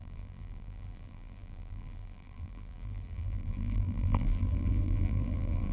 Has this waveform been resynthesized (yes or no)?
yes